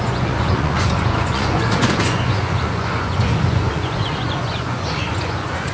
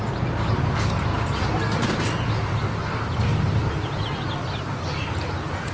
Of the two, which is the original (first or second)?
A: second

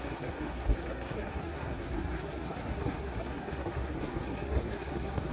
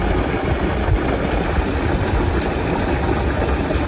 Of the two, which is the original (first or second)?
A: second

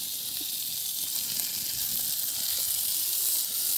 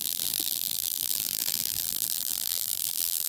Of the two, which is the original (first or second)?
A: first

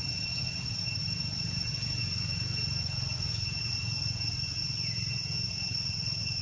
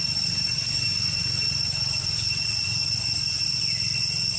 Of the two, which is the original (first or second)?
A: second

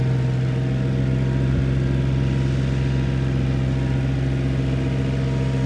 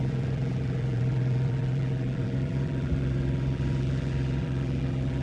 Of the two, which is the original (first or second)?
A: first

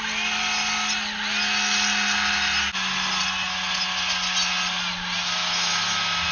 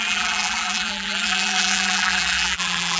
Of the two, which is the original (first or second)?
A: first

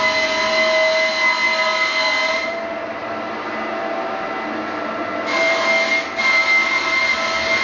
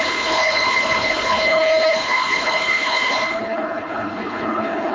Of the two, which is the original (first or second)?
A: first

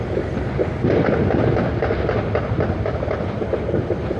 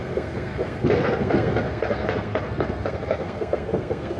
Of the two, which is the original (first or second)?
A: first